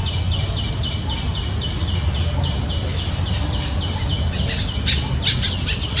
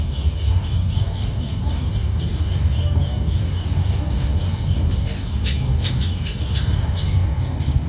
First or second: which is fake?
second